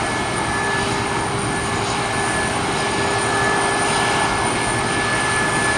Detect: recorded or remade recorded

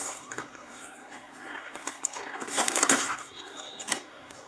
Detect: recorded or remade remade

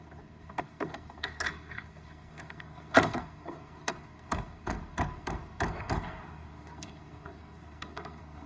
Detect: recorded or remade remade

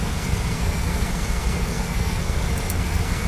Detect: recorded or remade remade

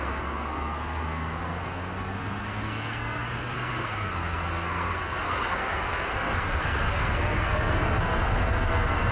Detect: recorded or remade remade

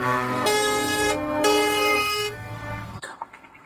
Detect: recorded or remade remade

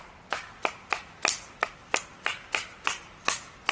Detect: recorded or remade recorded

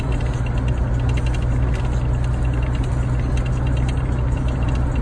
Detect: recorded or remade recorded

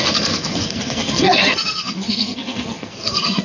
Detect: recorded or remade remade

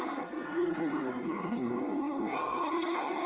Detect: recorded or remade remade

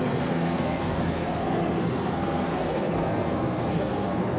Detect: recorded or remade remade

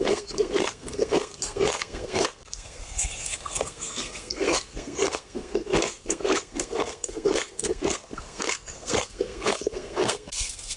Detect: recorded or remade remade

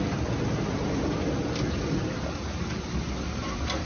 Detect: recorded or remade recorded